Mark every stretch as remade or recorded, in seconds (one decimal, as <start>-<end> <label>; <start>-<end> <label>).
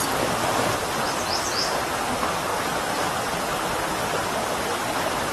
0.0-5.3 recorded